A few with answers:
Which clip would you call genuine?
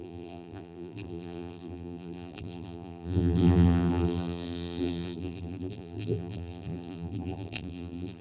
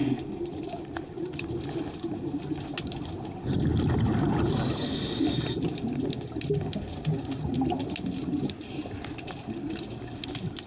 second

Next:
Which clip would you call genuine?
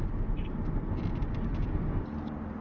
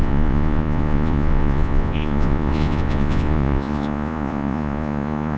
first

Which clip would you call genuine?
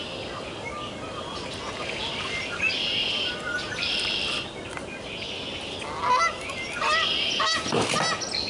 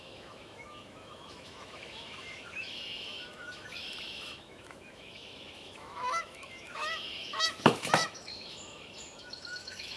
first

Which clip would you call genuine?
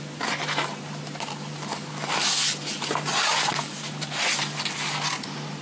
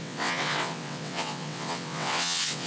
first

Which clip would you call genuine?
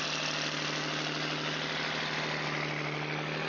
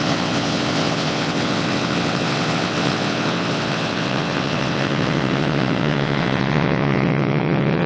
first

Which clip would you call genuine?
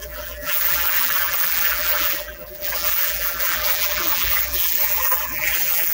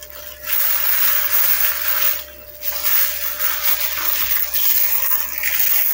second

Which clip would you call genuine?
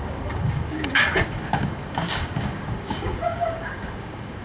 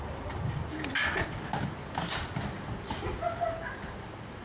second